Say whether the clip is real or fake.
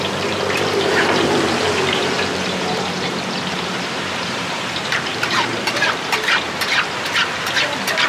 fake